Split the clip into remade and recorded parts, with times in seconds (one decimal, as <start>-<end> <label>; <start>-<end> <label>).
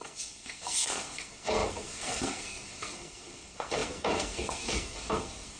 0.0-5.6 remade